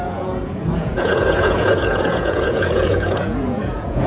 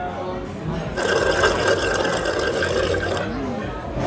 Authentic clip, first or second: second